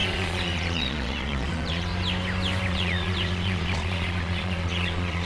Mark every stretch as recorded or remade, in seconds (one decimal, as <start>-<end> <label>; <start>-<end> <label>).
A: 0.0-1.9 remade; 1.9-2.7 recorded; 2.7-5.2 remade